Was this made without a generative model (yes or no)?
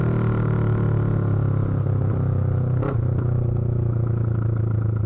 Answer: yes